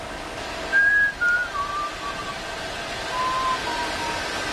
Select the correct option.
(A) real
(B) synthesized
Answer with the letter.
A